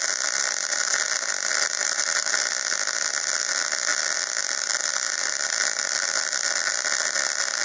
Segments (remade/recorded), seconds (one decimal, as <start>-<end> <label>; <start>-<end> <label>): 0.0-1.8 recorded; 1.8-2.3 remade; 2.3-7.6 recorded